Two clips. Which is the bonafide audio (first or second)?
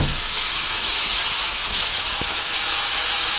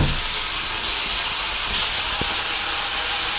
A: second